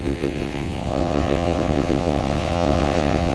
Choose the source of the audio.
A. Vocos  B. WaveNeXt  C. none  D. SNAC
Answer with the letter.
B